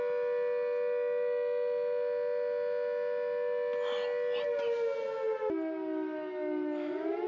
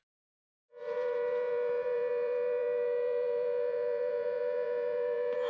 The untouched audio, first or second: first